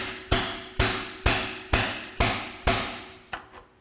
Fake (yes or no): no